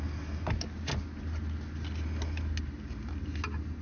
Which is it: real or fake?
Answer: real